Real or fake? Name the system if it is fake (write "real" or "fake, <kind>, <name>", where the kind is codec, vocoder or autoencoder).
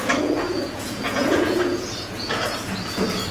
fake, vocoder, Vocos